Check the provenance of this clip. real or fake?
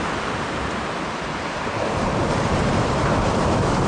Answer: real